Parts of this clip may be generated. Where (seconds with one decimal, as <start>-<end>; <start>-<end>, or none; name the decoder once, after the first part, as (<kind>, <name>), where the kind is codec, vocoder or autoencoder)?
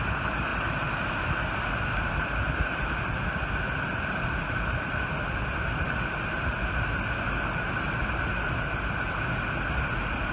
none